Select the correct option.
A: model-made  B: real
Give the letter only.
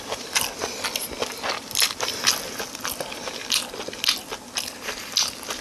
B